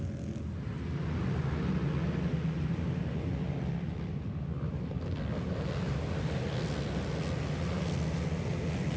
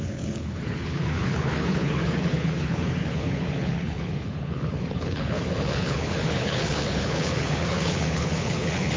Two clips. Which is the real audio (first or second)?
first